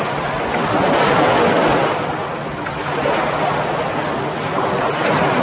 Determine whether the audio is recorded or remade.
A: recorded